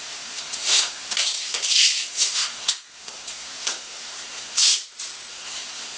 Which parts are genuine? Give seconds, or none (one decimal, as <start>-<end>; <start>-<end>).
4.8-5.3